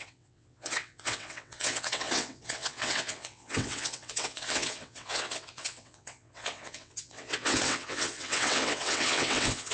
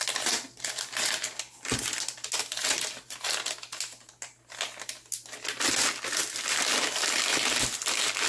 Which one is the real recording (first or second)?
second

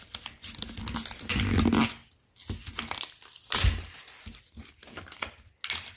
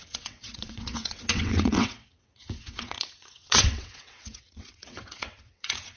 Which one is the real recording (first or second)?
first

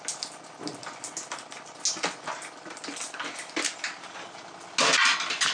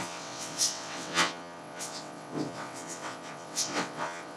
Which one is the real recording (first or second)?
first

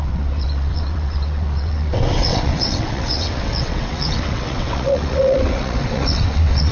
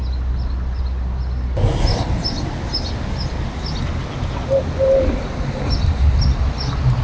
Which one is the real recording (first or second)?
second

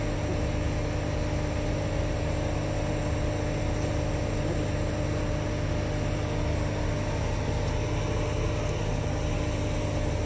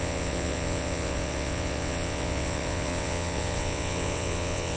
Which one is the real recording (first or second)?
first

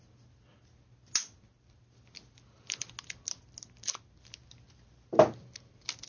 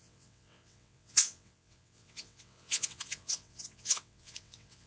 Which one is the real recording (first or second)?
first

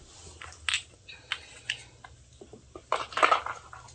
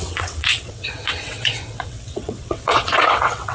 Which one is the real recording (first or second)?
first